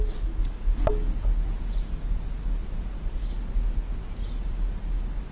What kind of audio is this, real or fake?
real